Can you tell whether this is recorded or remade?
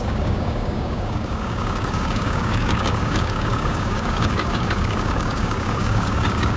remade